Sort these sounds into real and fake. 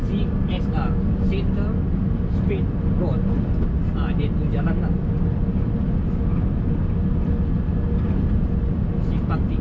real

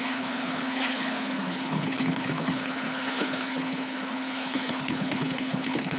fake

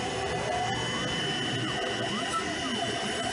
real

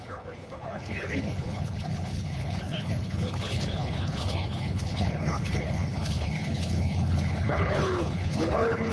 fake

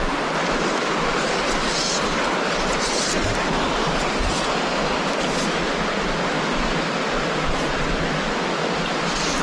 real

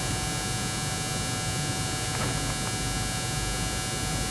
real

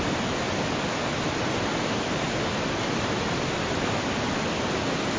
real